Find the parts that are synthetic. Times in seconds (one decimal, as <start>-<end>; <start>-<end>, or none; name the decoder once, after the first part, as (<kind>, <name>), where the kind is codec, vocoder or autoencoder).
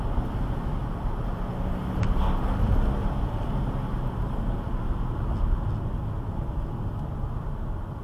none